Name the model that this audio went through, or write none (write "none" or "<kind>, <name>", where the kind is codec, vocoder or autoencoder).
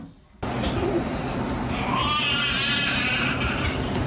none